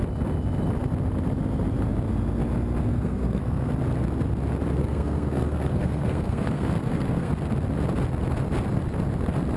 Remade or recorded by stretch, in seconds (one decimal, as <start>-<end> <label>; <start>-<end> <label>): 0.0-2.8 recorded; 2.8-3.7 remade; 3.7-4.8 recorded; 4.8-7.3 remade; 7.3-9.6 recorded